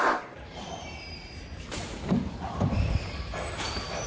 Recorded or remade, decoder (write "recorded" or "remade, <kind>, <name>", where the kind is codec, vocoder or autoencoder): remade, vocoder, BigVGAN v2